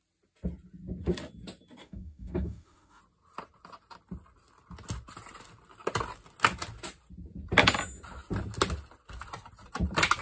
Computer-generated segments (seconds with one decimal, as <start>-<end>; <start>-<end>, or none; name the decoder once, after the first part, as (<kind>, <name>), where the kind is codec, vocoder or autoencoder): 1.8-3.0 (autoencoder, DAC-VAE)